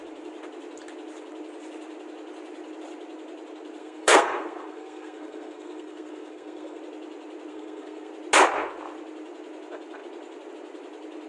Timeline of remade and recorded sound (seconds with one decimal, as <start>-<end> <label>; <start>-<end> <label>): 0.0-3.8 recorded; 3.8-6.8 remade; 6.8-7.5 recorded; 7.5-8.1 remade; 8.1-11.3 recorded